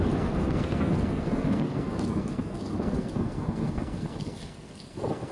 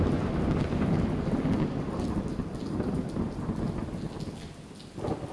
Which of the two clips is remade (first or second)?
first